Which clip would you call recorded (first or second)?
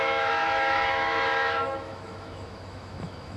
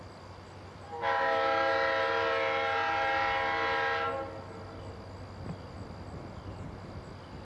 second